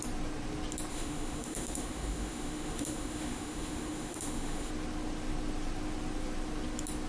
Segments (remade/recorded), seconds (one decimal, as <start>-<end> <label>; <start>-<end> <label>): 0.0-0.9 recorded; 0.9-4.7 remade; 4.7-7.1 recorded